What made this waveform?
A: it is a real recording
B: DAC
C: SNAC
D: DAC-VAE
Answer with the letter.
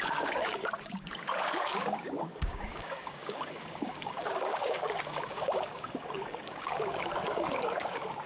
B